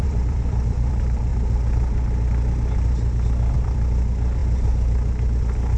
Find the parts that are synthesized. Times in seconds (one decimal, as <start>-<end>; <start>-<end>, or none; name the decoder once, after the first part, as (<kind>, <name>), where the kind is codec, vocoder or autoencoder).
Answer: 0.0-1.3 (vocoder, BigVGAN v2); 3.5-4.4